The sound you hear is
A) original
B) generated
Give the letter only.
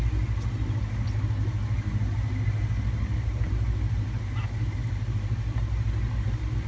A